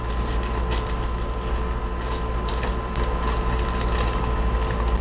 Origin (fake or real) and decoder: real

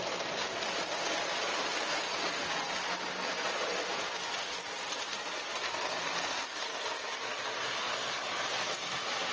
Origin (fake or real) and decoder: real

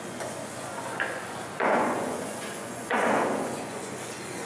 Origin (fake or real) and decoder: fake, vocoder, Vocos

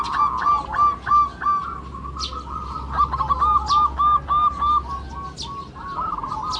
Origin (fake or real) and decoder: real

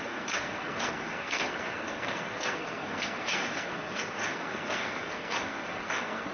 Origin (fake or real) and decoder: fake, codec, SNAC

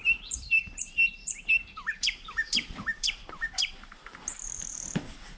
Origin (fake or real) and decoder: fake, vocoder, BigVGAN v2